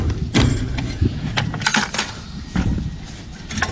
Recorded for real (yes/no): yes